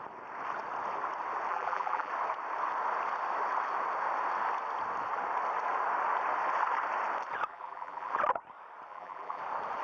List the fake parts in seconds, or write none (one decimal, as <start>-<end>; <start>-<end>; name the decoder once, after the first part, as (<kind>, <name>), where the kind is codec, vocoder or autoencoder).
1.5-2.1 (vocoder, BigVGAN v2); 7.5-8.1; 8.9-9.4